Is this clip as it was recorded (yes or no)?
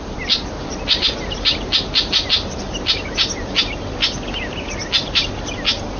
yes